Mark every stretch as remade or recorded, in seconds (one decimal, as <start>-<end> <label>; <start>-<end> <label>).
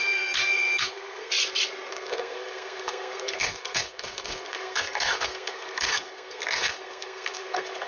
0.0-1.3 remade; 1.3-1.9 recorded; 1.9-7.9 remade